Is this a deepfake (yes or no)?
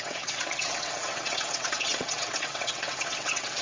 yes